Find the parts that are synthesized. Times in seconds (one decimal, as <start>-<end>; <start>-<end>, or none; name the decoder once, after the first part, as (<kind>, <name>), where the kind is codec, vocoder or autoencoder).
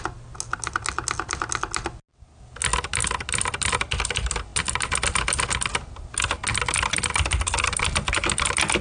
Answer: none